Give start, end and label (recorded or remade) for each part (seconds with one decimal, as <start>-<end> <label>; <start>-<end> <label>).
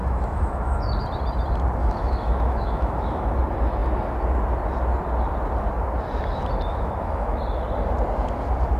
0.0-0.8 remade; 0.8-1.8 recorded; 1.8-3.4 remade; 3.4-6.7 recorded; 6.7-7.4 remade; 7.4-8.8 recorded